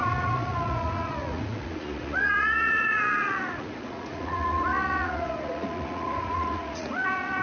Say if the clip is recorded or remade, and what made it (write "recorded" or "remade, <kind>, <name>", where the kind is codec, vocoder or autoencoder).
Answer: remade, vocoder, Vocos